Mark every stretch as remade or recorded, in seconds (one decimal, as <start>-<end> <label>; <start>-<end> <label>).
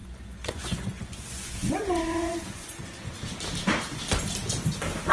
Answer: 0.0-3.1 remade; 3.1-5.1 recorded